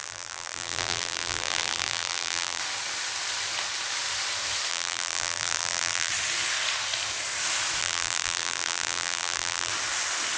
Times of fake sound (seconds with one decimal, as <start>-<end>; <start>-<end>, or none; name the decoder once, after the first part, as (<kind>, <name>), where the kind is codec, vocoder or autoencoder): 0.0-2.6 (vocoder, BigVGAN v2); 4.7-6.1; 7.8-9.7